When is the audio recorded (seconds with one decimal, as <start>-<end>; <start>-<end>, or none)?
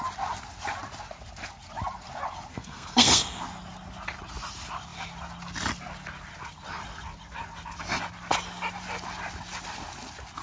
0.0-2.5; 3.4-10.4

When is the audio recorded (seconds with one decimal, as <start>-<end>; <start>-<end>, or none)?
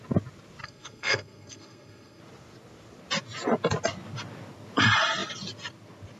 0.0-0.6; 2.2-6.2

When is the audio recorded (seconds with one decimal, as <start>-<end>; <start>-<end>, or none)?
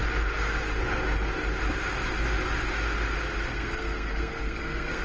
0.0-3.5